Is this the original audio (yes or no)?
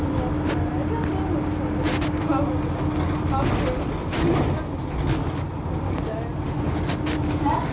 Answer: yes